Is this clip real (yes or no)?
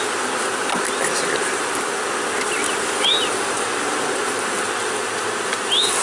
yes